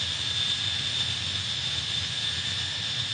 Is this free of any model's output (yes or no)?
yes